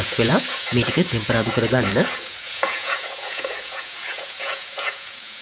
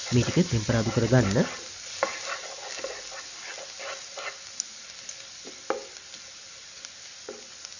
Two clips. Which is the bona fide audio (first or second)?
second